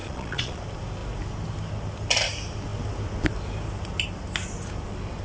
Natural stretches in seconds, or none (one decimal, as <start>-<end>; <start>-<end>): 0.6-5.2

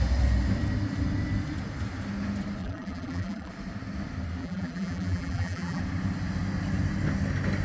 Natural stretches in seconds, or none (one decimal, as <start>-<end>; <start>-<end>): 0.0-2.6; 3.5-4.4; 5.8-7.6

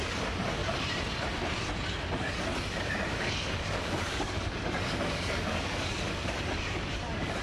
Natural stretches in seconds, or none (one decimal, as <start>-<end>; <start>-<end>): 0.6-2.1; 2.5-3.2

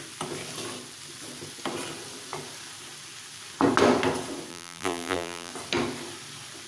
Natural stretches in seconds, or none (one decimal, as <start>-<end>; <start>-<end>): 0.0-4.5; 5.5-6.7

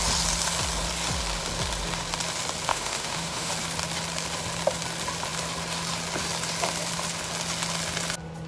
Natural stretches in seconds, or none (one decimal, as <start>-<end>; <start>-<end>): 0.0-2.7; 3.5-8.5

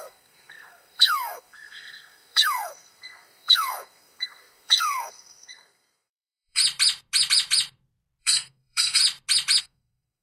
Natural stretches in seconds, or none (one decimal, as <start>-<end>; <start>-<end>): 6.6-8.2; 9.0-9.6

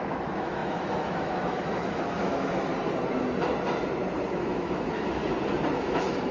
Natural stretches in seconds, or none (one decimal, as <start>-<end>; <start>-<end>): 2.7-4.3; 5.2-5.8

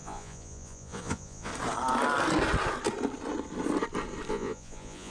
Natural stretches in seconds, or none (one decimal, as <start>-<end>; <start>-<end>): 1.5-4.3